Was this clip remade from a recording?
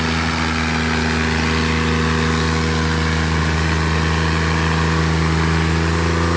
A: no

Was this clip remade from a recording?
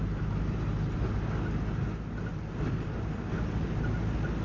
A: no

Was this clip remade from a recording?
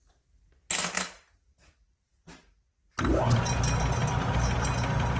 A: no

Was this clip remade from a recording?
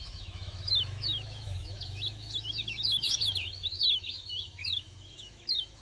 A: yes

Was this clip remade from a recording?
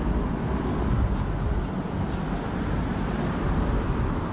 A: no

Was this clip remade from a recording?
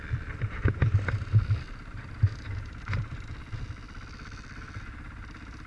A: yes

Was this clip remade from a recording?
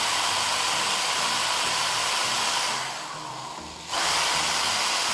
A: no